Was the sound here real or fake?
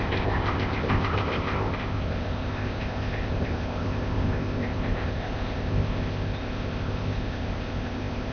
fake